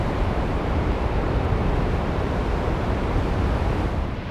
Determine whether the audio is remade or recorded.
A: remade